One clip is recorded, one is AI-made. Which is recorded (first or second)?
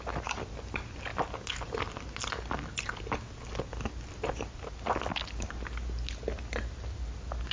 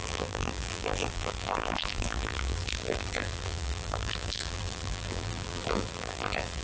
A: first